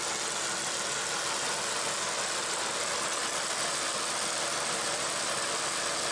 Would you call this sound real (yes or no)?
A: yes